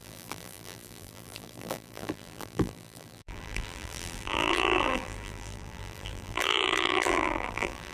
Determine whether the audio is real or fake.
fake